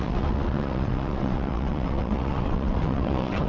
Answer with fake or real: fake